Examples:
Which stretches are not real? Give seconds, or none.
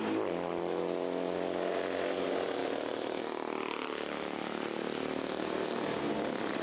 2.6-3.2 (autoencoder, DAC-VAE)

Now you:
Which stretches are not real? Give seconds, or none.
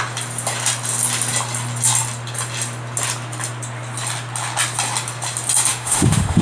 5.7-6.4 (autoencoder, DAC-VAE)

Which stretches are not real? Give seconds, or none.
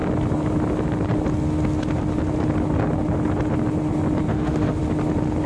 4.3-4.8 (autoencoder, DAC-VAE)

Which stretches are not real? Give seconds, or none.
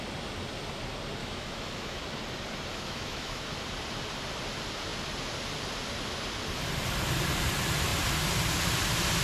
1.2-2.0 (autoencoder, DAC-VAE); 2.7-3.4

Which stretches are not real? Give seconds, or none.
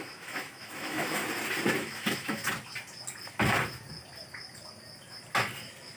0.0-1.2 (autoencoder, DAC-VAE); 1.8-2.4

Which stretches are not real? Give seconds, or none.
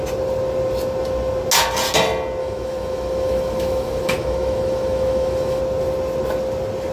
2.4-5.6 (autoencoder, DAC-VAE)